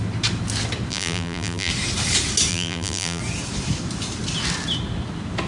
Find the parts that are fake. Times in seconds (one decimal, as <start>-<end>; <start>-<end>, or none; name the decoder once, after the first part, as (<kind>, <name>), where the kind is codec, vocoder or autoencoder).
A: 0.9-1.7 (vocoder, BigVGAN v2); 2.5-3.2

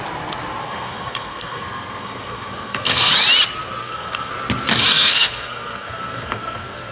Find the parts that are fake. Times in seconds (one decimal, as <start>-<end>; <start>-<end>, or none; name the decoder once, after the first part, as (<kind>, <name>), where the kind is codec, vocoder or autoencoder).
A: 0.6-3.1 (codec, SNAC); 3.8-4.3; 4.9-6.9

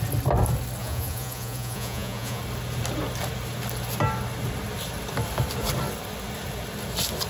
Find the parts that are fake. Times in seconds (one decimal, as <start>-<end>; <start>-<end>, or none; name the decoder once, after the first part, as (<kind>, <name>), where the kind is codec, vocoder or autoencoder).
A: 0.8-2.4 (vocoder, Vocos)

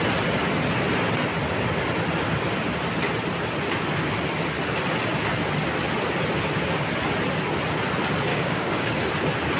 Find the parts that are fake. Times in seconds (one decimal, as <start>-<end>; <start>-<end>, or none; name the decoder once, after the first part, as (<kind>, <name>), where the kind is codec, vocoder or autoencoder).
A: 8.3-8.9 (codec, DAC)

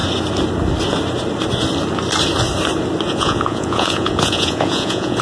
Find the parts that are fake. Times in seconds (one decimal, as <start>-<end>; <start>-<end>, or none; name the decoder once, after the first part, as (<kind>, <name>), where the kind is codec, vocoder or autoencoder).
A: 3.1-5.2 (vocoder, Vocos)